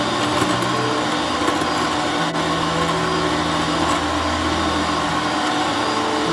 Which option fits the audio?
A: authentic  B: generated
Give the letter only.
A